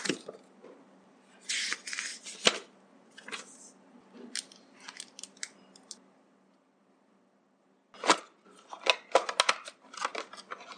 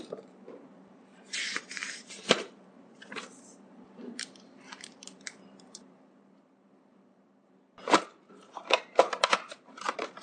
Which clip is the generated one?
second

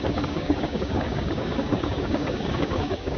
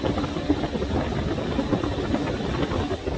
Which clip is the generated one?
first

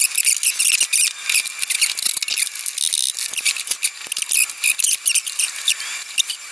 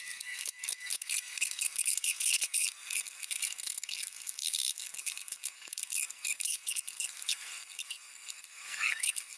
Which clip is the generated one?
second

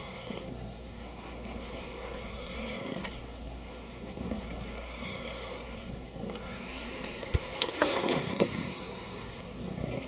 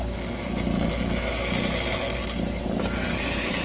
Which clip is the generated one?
first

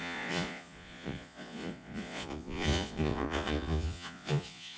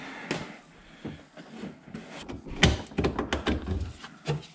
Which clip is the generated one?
first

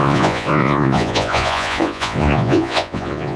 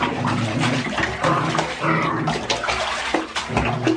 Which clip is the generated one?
first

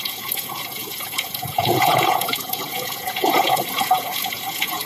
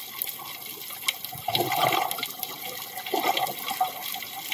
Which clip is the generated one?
first